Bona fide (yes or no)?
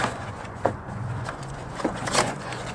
no